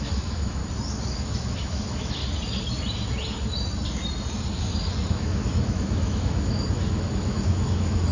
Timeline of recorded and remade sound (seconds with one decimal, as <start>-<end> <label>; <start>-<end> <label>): 0.0-0.6 remade; 0.6-1.2 recorded; 1.2-2.2 remade; 2.2-5.1 recorded; 5.1-8.1 remade